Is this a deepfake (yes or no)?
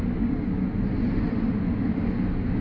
no